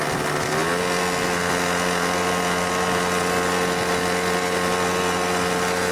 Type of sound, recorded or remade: recorded